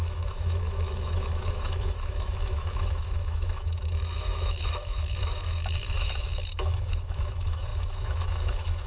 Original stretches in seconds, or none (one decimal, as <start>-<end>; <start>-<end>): none

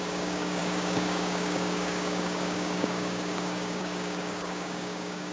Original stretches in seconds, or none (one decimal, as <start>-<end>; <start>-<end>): none

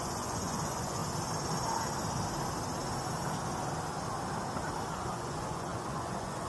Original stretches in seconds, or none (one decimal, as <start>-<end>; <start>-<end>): 1.0-4.9

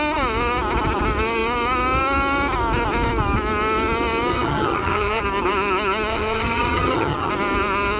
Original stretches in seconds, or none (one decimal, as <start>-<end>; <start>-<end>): 0.0-4.3; 5.2-6.1; 7.3-8.0

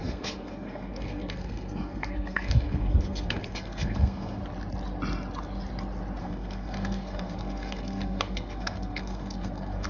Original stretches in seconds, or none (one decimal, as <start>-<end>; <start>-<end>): 4.4-6.2

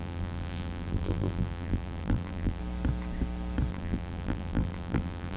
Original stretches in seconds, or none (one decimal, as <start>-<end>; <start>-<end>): 2.6-3.7

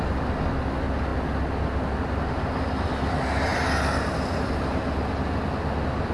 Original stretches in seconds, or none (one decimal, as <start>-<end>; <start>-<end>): 0.0-6.1